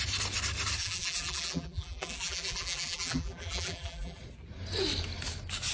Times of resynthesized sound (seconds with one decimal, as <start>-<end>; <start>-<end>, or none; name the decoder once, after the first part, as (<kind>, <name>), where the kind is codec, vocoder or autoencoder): 0.8-4.2 (vocoder, BigVGAN v2)